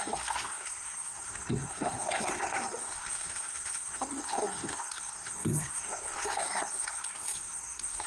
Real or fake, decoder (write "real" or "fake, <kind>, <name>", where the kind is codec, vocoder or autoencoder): fake, codec, SNAC